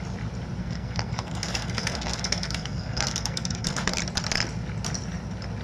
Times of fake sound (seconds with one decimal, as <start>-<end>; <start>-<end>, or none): 0.6-4.0